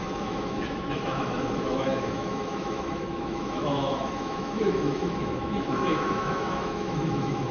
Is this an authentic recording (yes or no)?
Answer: no